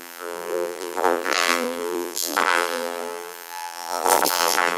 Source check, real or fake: fake